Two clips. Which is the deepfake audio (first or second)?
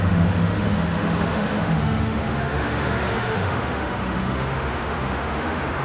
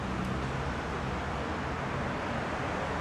first